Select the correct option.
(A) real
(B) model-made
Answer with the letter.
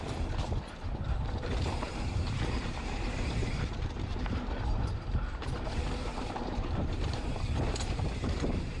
B